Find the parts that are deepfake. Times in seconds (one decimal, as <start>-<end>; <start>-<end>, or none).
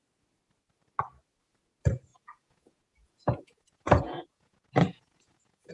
2.1-5.7